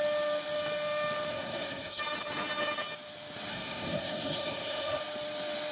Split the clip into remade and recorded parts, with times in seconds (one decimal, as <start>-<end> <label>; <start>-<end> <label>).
0.0-1.3 recorded; 1.3-2.0 remade; 2.0-3.5 recorded; 3.5-5.0 remade; 5.0-5.7 recorded